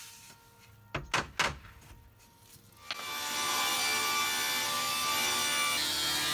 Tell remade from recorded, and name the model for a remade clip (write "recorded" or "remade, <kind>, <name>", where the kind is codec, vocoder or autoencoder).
recorded